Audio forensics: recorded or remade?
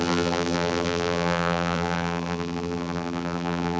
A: remade